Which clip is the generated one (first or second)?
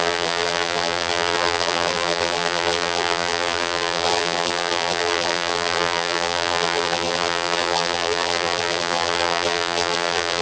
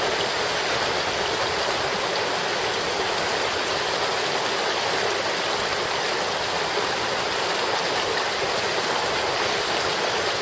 first